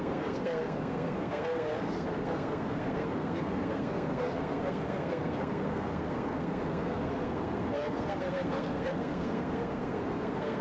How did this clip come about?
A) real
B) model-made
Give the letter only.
B